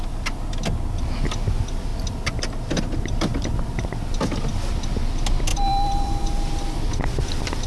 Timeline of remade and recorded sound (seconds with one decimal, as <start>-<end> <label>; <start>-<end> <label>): 0.0-5.5 recorded; 5.5-6.5 remade; 6.5-7.7 recorded